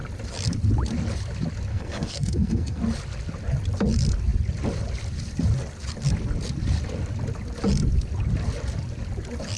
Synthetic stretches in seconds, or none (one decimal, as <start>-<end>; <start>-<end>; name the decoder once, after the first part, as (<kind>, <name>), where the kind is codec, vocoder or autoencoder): 1.7-2.8 (codec, SNAC)